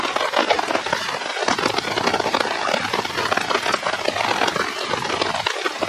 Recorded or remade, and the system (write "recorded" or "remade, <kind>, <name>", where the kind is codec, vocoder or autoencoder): recorded